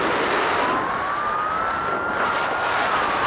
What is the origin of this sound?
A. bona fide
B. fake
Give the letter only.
A